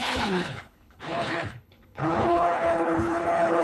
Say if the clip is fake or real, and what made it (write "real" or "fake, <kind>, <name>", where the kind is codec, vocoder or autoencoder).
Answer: fake, codec, HILCodec